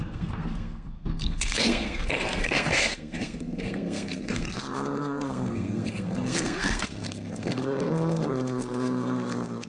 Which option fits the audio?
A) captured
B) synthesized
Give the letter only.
B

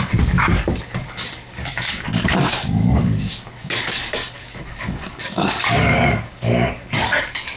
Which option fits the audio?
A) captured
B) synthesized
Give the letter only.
B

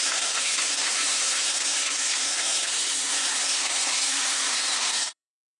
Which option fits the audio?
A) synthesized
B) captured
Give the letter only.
A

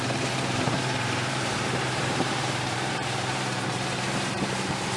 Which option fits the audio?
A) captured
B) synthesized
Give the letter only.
B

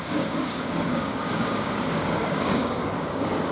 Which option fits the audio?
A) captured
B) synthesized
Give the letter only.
B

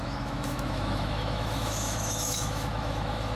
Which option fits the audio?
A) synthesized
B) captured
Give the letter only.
A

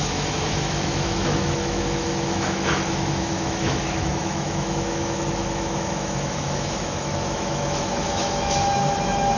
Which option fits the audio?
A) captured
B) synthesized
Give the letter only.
B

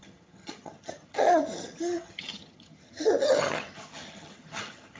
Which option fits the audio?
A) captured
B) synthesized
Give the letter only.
B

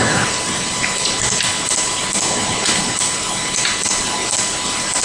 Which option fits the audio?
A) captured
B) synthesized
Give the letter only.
A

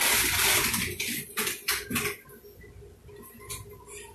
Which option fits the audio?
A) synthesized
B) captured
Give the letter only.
B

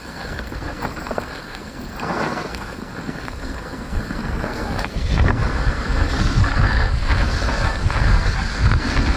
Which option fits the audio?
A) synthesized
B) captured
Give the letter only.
A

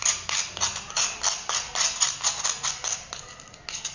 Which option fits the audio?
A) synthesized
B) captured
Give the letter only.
B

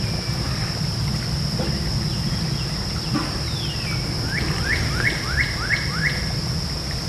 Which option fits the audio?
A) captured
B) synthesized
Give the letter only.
A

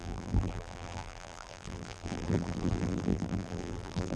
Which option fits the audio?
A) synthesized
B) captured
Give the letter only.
A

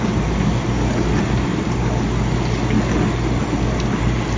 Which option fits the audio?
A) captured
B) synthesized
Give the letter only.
A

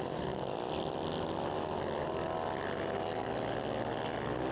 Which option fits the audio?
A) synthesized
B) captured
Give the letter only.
B